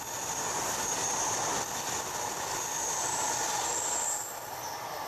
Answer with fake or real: real